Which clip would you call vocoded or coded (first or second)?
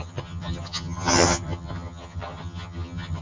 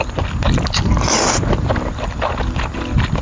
first